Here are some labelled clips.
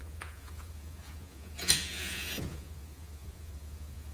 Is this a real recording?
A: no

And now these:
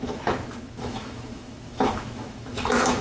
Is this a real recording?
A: no